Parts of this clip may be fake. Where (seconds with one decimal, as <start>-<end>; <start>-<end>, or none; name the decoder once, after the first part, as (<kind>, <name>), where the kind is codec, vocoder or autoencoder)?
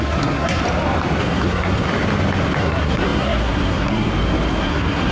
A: 0.0-0.6 (codec, SNAC); 1.2-1.9; 2.6-4.1; 4.6-5.1